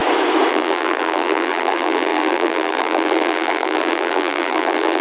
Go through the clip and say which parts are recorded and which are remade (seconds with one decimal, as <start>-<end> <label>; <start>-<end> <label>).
0.0-0.5 recorded; 0.5-5.0 remade